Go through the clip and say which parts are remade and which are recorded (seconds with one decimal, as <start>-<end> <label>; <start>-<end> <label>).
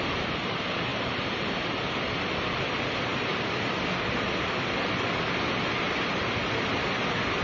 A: 0.0-0.9 recorded; 0.9-2.3 remade; 2.3-7.4 recorded